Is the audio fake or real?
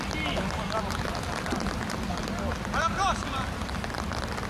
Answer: real